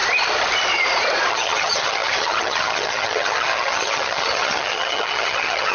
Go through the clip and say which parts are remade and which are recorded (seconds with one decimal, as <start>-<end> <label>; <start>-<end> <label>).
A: 0.0-1.3 recorded; 1.3-5.7 remade